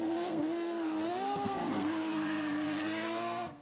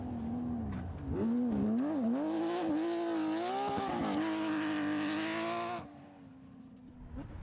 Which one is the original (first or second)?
second